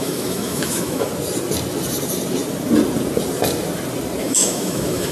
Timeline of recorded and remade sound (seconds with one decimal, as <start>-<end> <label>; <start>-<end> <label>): 0.0-1.1 remade; 1.1-4.2 recorded; 4.2-5.1 remade